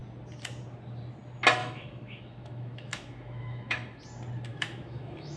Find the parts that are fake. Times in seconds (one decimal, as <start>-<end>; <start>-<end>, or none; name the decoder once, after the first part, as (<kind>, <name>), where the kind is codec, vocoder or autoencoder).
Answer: 1.6-4.0 (autoencoder, DAC-VAE); 4.5-5.4